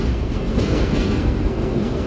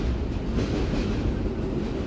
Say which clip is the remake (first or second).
first